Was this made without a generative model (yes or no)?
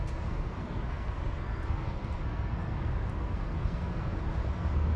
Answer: no